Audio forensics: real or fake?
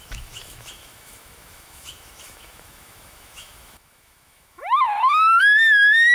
fake